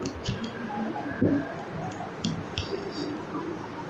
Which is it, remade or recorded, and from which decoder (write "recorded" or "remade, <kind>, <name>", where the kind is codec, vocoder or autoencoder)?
remade, vocoder, BigVGAN v2